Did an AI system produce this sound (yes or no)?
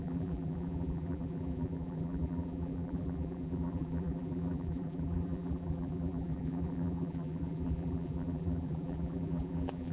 yes